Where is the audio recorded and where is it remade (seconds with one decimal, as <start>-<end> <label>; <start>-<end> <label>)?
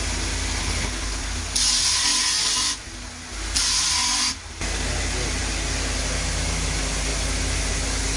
0.0-0.6 recorded; 0.6-1.2 remade; 1.2-8.2 recorded